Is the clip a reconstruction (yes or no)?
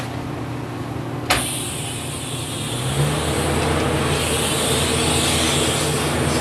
no